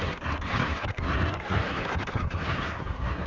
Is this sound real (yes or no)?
no